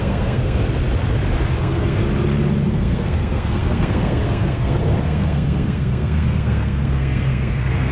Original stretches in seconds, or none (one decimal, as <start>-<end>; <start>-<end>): 0.6-1.6; 2.0-2.7